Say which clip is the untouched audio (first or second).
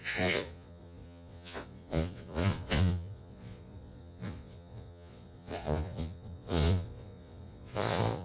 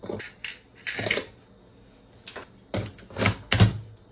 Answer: second